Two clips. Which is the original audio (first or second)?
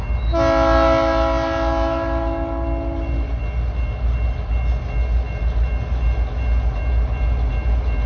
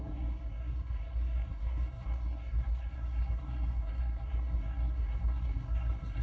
first